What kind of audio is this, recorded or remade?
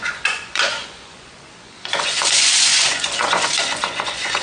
remade